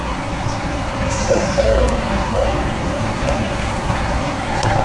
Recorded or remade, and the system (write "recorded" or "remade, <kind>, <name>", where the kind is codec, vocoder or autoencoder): remade, codec, SNAC